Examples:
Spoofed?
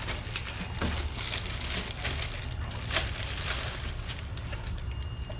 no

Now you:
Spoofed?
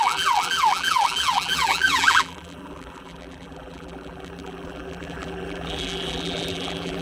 yes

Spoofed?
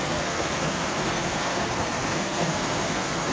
yes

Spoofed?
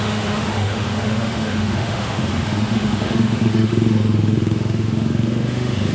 yes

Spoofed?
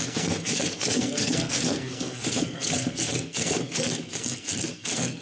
yes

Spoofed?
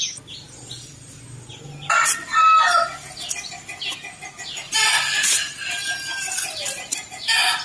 no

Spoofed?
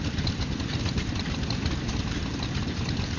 no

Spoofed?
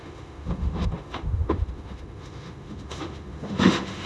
yes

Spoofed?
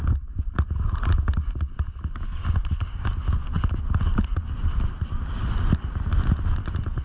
no